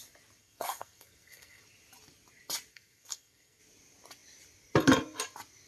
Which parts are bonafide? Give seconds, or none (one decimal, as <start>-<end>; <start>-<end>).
0.0-0.4; 1.6-2.7; 3.6-5.7